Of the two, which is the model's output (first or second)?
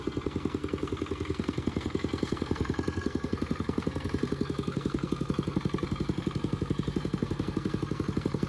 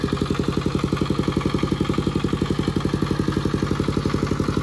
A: first